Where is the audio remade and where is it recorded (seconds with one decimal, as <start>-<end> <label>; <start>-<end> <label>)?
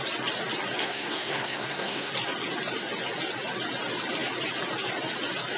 0.0-0.8 recorded; 0.8-2.1 remade; 2.1-5.6 recorded